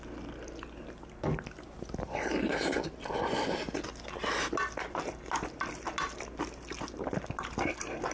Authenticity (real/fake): real